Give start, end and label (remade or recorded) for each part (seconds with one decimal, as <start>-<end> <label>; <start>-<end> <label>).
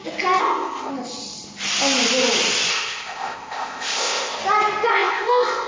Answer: 0.0-0.4 recorded; 0.4-0.9 remade; 0.9-2.7 recorded; 2.7-4.4 remade; 4.4-4.9 recorded; 4.9-5.7 remade